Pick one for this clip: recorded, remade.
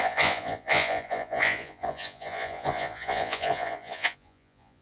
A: remade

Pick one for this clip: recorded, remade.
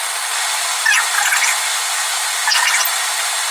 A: recorded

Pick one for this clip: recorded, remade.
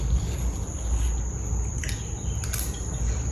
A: recorded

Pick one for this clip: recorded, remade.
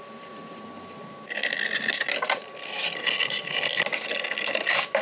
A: recorded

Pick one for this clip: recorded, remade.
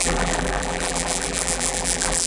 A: remade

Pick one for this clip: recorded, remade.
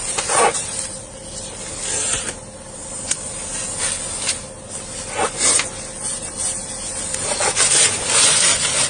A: recorded